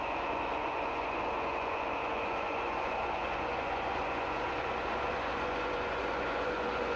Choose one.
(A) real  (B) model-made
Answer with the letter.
B